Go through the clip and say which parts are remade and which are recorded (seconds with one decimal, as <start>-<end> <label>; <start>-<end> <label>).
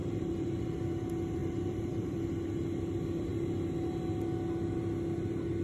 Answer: 0.0-0.6 remade; 0.6-1.4 recorded; 1.4-2.2 remade; 2.2-5.6 recorded